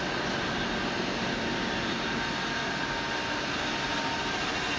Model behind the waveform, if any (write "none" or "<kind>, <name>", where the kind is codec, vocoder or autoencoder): none